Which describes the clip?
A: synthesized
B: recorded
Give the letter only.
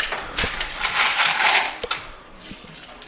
A